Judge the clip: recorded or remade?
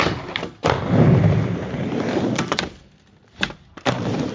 recorded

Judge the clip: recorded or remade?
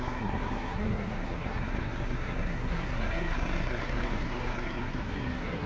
remade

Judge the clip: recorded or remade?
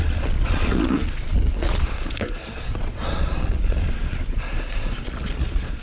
remade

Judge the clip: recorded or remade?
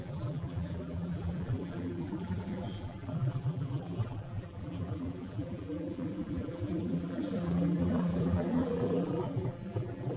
remade